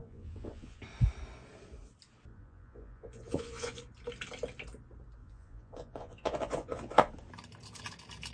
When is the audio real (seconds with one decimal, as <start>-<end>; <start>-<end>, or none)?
0.8-2.3; 3.8-5.2; 7.1-8.3